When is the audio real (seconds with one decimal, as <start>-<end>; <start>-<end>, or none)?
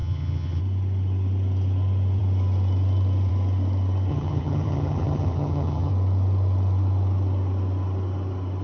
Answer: 0.6-4.1; 5.9-8.6